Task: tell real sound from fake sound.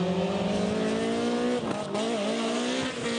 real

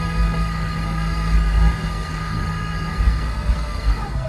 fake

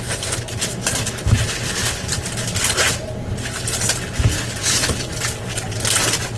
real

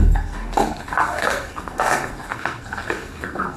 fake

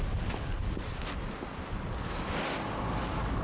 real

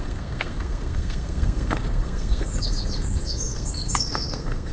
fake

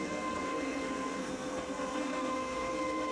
fake